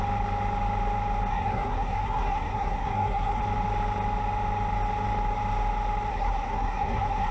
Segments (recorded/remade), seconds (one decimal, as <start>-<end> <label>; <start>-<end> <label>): 0.0-1.3 recorded; 1.3-3.4 remade; 3.4-6.1 recorded; 6.1-7.3 remade